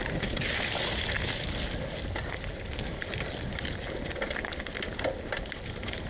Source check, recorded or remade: recorded